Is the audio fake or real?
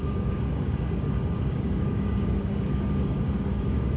fake